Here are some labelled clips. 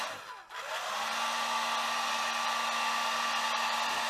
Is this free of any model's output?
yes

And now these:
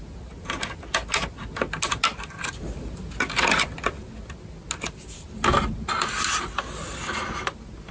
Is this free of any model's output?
yes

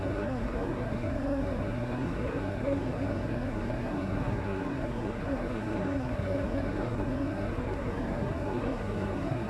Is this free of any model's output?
no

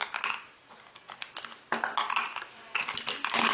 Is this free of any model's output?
yes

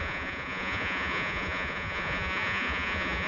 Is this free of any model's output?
no